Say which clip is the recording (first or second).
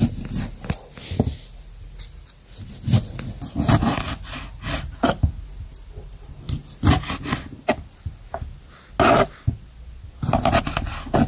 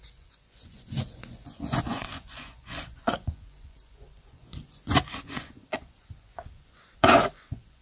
first